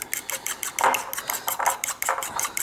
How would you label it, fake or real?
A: real